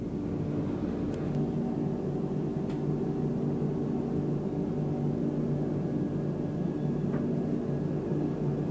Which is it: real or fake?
real